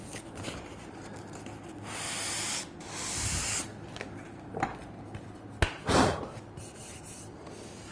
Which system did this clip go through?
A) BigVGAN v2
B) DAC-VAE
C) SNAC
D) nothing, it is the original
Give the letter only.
D